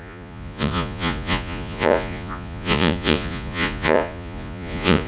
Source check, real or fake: fake